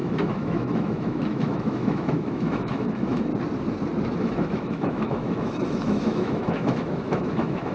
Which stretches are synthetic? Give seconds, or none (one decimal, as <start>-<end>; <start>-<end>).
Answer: 0.0-3.3; 4.2-7.7